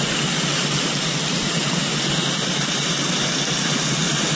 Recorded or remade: recorded